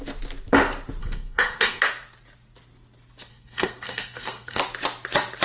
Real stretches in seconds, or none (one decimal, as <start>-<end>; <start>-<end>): 0.0-1.0; 1.8-3.3; 4.6-5.4